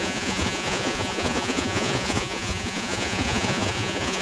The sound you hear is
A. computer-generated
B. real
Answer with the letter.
A